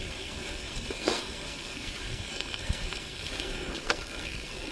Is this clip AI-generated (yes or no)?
yes